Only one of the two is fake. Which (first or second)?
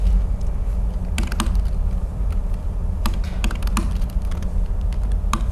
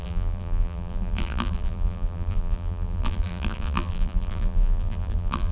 second